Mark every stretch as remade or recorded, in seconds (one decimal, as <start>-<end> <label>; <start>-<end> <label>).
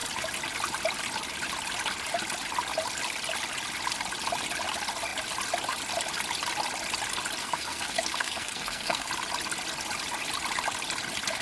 0.0-7.4 recorded; 7.4-9.1 remade; 9.1-11.4 recorded